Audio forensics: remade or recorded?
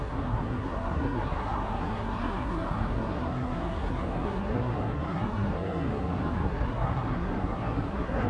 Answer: remade